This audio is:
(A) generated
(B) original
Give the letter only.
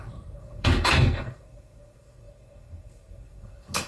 A